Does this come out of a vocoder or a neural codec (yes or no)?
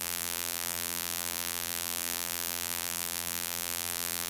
yes